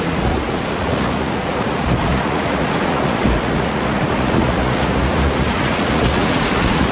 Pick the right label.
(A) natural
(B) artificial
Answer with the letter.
B